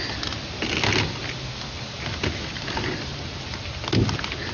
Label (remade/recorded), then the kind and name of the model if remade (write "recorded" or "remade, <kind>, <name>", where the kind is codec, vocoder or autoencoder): recorded